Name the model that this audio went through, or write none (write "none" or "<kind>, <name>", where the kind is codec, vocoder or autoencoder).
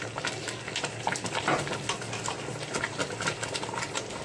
none